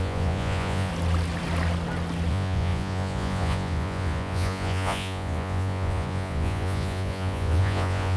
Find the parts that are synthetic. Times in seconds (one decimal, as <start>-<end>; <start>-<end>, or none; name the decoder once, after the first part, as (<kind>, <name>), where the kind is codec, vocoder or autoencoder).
0.0-0.9 (vocoder, Vocos); 2.3-8.2